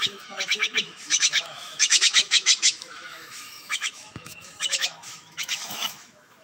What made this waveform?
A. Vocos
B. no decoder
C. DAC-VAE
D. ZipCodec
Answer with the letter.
C